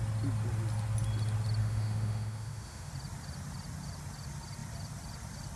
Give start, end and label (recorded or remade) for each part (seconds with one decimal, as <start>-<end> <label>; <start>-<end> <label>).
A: 0.0-1.6 recorded; 1.6-2.9 remade; 2.9-5.6 recorded